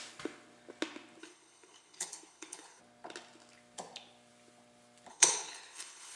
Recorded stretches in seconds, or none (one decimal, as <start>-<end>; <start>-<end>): 0.0-1.2; 2.8-5.1